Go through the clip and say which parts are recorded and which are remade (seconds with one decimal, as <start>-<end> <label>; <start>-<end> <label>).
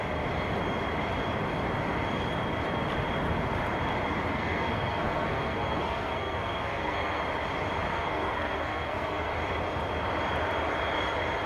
0.0-4.3 recorded; 4.3-7.2 remade; 7.2-7.9 recorded; 7.9-9.3 remade; 9.3-11.5 recorded